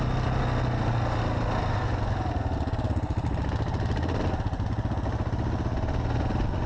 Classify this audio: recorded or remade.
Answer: recorded